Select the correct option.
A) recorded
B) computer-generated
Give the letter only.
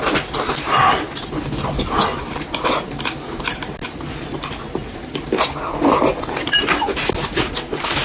A